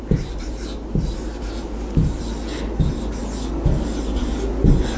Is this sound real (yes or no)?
yes